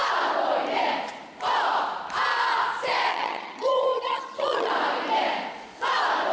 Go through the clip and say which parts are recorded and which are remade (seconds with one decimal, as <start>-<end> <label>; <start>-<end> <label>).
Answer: 0.0-3.1 recorded; 3.1-4.7 remade; 4.7-6.3 recorded